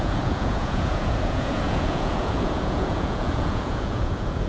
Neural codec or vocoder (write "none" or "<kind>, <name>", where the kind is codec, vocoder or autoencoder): vocoder, Vocos